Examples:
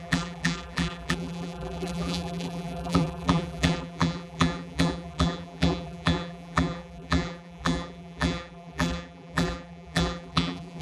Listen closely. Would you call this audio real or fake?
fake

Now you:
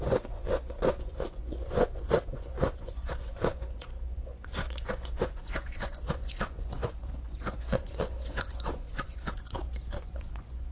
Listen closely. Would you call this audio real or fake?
fake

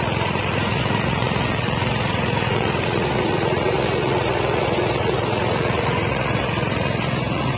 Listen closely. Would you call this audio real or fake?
fake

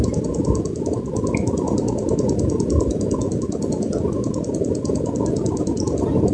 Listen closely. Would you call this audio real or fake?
real